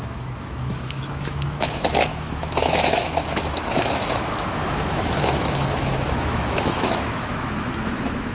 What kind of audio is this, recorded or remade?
remade